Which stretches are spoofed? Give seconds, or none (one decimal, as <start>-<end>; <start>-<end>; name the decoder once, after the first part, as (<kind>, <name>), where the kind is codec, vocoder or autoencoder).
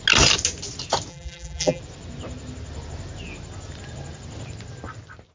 1.1-1.8 (vocoder, BigVGAN v2)